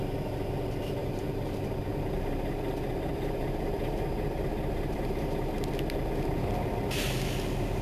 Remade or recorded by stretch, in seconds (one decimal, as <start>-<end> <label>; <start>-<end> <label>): 0.0-1.0 recorded; 1.0-5.7 remade; 5.7-7.8 recorded